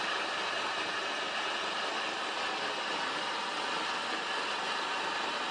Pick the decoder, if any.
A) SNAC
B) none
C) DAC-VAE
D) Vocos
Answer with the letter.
B